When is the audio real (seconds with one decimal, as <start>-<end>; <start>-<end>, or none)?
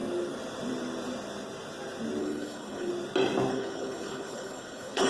0.0-2.2; 2.9-3.5